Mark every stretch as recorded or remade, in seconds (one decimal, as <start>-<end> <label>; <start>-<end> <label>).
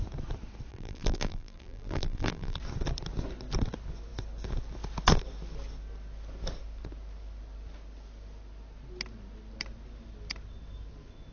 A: 0.0-0.7 recorded; 0.7-2.6 remade; 2.6-11.3 recorded